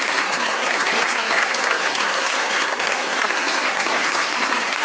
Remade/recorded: remade